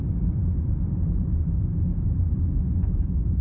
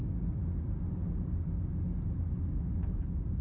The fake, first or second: first